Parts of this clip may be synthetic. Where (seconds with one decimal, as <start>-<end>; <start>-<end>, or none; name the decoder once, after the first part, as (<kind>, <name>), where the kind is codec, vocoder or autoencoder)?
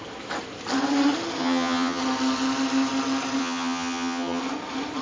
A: 1.4-2.0 (vocoder, HiFi-GAN); 3.4-4.4